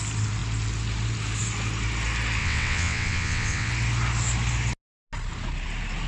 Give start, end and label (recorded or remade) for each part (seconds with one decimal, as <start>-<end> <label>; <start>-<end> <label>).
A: 0.0-2.4 recorded; 2.4-3.7 remade; 3.7-6.1 recorded